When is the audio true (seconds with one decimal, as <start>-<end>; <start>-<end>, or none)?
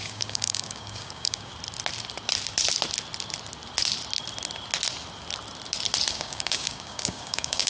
1.5-6.1